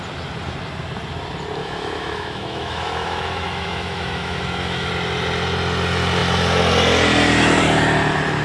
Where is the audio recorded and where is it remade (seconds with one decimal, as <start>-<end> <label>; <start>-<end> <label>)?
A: 0.0-1.6 recorded; 1.6-4.9 remade; 4.9-8.4 recorded